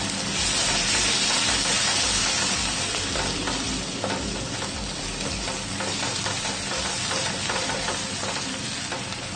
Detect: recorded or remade recorded